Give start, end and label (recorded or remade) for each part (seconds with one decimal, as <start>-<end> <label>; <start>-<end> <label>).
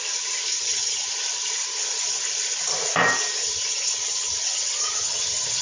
0.0-0.5 recorded; 0.5-1.1 remade; 1.1-3.4 recorded; 3.4-5.6 remade